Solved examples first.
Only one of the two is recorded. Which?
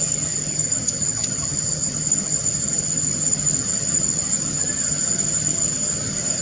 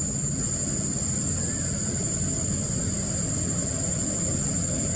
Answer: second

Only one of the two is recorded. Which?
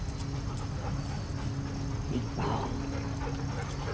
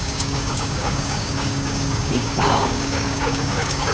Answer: first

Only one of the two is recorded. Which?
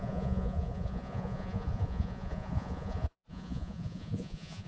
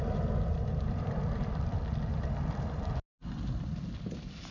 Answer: second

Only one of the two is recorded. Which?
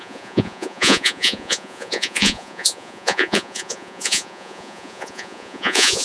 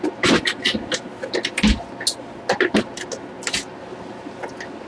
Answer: second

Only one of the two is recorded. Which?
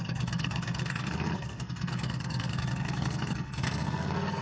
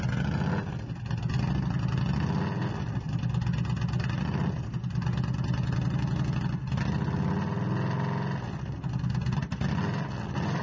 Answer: second